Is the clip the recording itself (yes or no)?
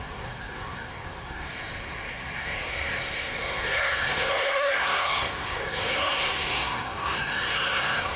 no